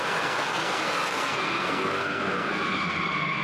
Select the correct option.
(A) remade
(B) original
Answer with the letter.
A